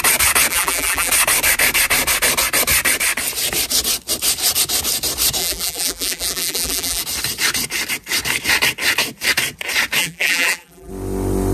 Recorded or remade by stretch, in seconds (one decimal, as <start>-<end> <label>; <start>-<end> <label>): 0.0-0.5 recorded; 0.5-1.1 remade; 1.1-5.4 recorded; 5.4-7.0 remade; 7.0-10.0 recorded; 10.0-10.9 remade; 10.9-11.5 recorded